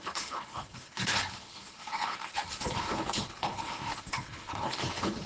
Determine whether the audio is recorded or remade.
remade